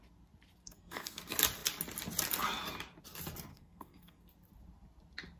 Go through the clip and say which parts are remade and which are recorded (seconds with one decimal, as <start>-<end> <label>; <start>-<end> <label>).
0.0-0.6 recorded; 0.6-1.2 remade; 1.2-3.5 recorded; 3.5-4.3 remade; 4.3-5.4 recorded